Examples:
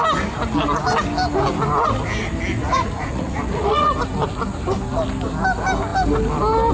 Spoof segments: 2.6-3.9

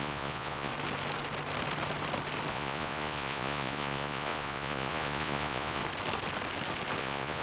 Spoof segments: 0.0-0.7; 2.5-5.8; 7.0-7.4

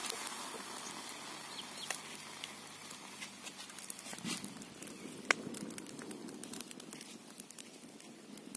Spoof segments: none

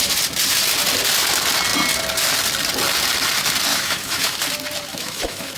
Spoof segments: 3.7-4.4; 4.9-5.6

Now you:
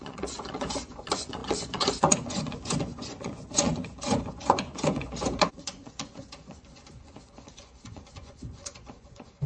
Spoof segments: 0.0-9.5